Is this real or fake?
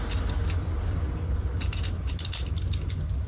real